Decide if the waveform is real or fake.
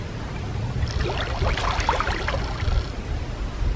real